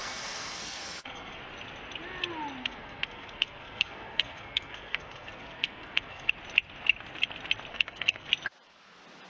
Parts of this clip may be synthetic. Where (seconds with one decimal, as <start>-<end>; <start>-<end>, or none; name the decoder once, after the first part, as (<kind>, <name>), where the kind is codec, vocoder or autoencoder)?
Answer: 0.0-1.4 (codec, SNAC); 2.6-6.3; 7.7-8.3